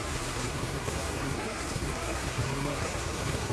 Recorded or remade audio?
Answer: remade